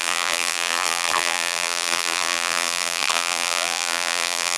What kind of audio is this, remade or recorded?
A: remade